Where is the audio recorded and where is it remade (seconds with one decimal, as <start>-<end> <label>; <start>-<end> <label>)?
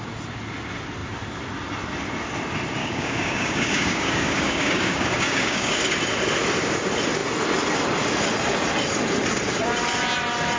0.0-2.8 recorded; 2.8-5.8 remade; 5.8-10.6 recorded